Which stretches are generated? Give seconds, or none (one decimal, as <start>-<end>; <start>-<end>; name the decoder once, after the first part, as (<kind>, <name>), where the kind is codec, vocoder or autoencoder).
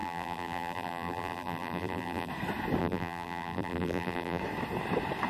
0.0-2.3 (vocoder, BigVGAN v2); 2.8-4.4